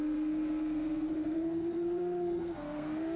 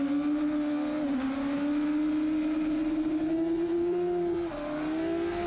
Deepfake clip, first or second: first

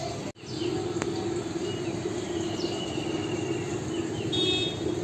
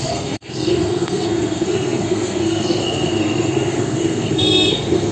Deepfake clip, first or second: second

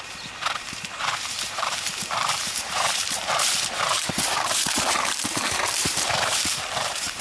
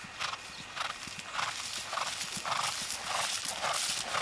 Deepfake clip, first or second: first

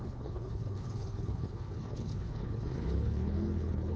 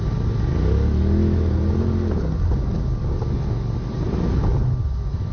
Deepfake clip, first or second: first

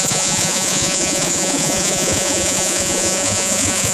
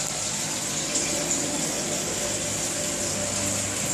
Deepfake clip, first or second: first